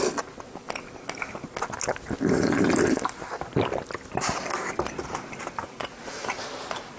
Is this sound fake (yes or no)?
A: no